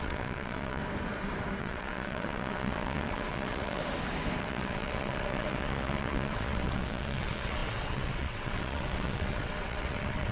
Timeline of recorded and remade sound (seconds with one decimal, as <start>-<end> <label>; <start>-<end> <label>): 0.0-0.8 remade; 0.8-1.6 recorded; 1.6-3.8 remade; 3.8-4.4 recorded; 4.4-10.3 remade